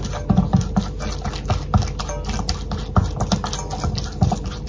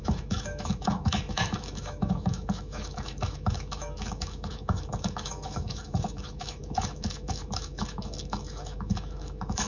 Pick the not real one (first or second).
second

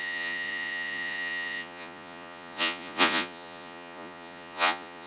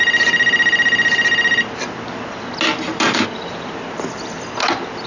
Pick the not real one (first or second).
first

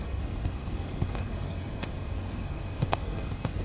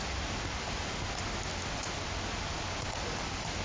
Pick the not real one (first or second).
first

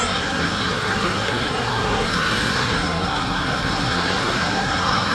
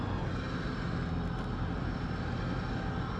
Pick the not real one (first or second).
first